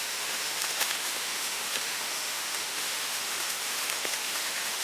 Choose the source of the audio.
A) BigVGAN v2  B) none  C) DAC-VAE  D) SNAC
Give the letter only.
C